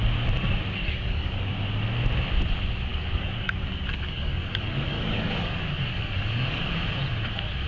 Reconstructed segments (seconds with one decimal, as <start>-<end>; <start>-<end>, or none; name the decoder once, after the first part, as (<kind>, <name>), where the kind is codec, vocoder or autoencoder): 0.8-1.5 (codec, DAC); 2.9-6.7